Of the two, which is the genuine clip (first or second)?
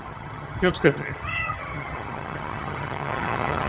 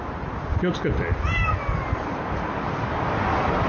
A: second